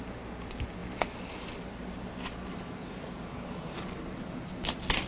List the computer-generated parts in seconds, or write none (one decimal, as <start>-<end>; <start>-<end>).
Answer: none